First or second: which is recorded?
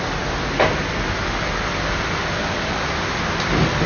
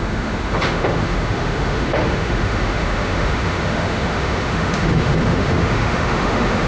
first